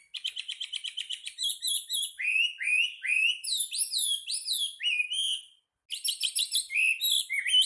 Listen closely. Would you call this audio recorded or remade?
recorded